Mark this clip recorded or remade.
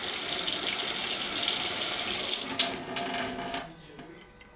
recorded